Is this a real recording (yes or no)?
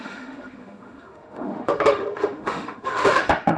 no